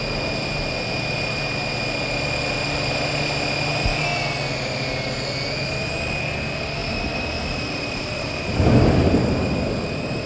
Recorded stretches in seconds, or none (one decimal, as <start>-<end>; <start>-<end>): 0.0-6.8; 8.3-10.3